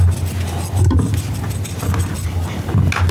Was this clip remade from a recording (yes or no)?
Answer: no